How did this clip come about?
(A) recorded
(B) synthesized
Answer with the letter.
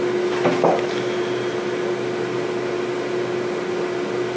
A